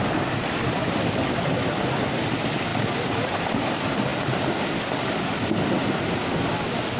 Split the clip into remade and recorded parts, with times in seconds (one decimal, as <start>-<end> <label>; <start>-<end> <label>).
0.0-7.0 recorded